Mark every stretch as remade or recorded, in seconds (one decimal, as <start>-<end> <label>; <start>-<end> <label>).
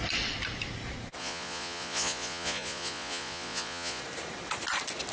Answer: 0.0-1.2 recorded; 1.2-4.0 remade; 4.0-5.1 recorded